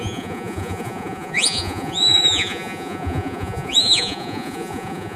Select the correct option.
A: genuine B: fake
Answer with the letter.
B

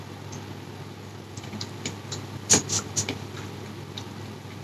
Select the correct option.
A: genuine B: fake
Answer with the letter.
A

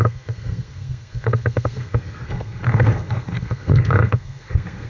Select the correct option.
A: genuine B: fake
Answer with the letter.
B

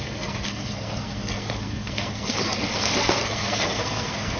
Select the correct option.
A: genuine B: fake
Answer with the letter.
B